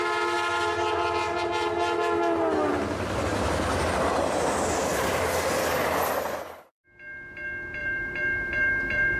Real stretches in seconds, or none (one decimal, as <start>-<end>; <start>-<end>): 0.0-7.8